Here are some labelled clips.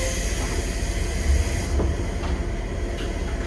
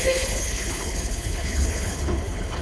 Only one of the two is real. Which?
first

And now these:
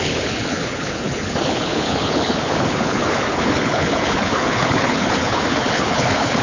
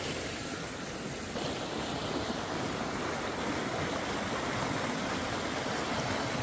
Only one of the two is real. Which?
second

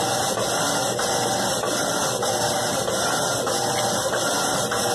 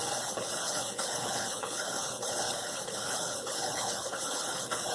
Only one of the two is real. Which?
first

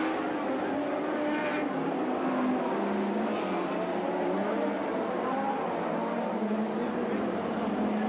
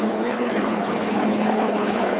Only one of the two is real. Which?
first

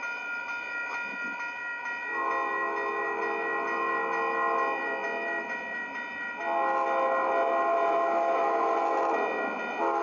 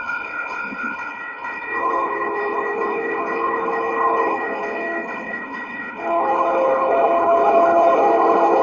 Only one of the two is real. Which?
first